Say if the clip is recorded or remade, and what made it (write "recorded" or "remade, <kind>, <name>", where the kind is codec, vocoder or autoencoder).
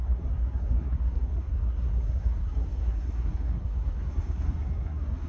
remade, codec, SNAC